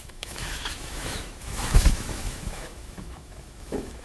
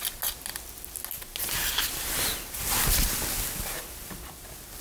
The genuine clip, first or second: second